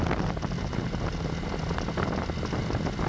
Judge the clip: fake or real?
real